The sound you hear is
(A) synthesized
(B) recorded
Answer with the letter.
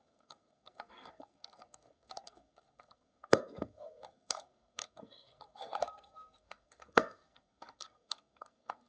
A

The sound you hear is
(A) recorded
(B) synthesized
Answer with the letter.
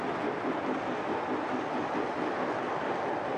A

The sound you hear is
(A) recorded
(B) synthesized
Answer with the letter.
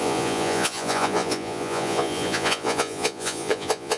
B